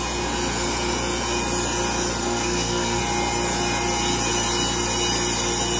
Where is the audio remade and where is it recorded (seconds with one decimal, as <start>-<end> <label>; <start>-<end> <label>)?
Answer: 0.0-2.2 recorded; 2.2-3.0 remade; 3.0-5.8 recorded